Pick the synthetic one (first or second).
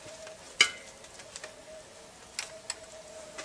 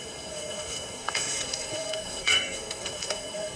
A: second